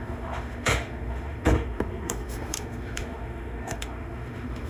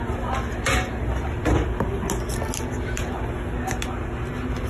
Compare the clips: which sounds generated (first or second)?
first